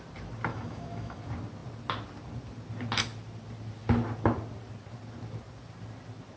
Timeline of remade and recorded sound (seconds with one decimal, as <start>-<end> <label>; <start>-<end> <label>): 0.0-0.5 recorded; 0.5-1.2 remade; 1.2-6.4 recorded